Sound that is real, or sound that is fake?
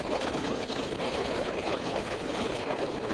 fake